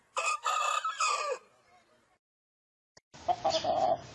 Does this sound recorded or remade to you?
remade